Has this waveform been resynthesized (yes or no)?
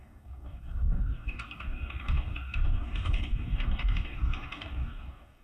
yes